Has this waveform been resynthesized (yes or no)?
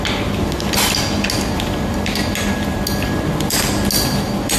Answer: no